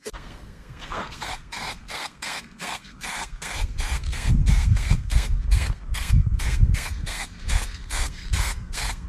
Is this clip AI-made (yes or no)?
yes